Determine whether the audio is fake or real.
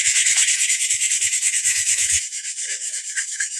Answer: fake